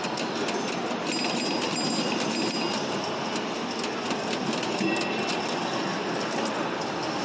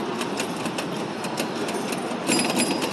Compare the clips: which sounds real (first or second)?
first